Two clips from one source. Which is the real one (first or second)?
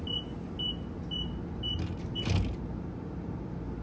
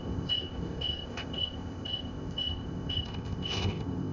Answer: first